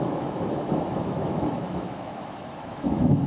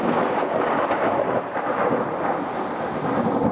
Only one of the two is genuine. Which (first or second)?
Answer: second